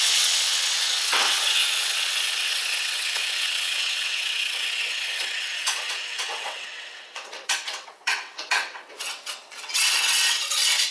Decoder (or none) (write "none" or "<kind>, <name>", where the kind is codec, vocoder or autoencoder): vocoder, WaveNeXt